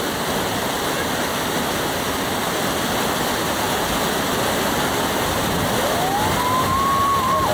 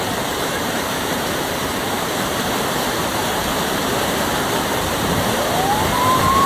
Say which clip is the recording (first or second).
first